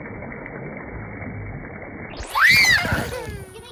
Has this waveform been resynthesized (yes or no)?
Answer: no